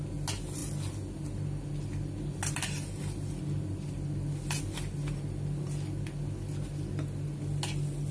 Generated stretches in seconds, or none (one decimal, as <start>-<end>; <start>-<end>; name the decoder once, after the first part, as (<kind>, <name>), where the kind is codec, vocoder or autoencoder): none